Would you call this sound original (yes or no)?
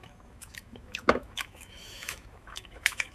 no